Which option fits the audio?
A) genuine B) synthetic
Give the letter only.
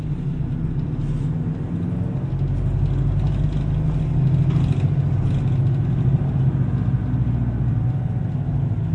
A